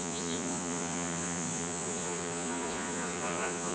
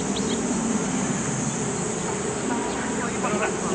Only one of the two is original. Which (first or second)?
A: second